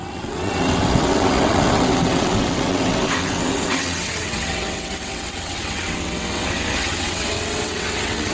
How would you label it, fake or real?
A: fake